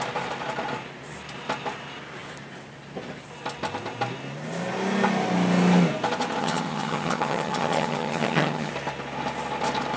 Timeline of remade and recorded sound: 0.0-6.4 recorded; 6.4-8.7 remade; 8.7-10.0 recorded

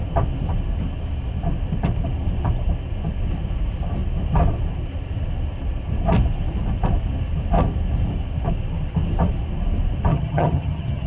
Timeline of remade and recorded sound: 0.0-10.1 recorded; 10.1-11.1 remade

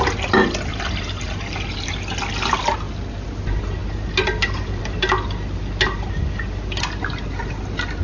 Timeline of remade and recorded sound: 0.0-8.0 recorded

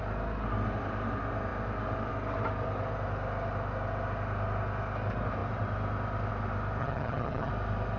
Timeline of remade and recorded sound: 0.0-6.8 recorded; 6.8-7.5 remade; 7.5-8.0 recorded

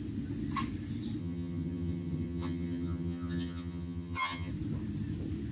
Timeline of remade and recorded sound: 0.0-1.2 recorded; 1.2-4.5 remade; 4.5-5.5 recorded

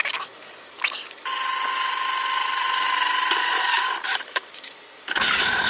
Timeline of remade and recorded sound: 0.0-5.7 recorded

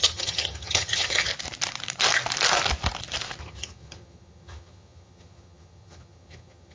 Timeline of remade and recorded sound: 0.0-1.3 remade; 1.3-3.4 recorded; 3.4-6.7 remade

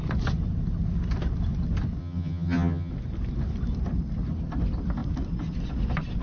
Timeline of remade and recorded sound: 0.0-2.0 recorded; 2.0-2.9 remade; 2.9-6.2 recorded